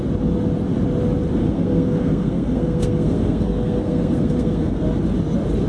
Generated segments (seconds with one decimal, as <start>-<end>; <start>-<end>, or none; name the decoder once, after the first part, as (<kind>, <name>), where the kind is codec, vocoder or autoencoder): 1.4-4.8 (codec, SNAC)